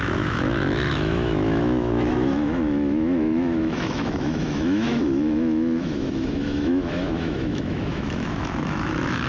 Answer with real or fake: fake